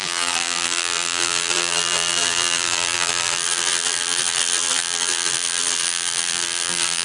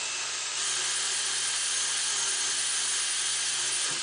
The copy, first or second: first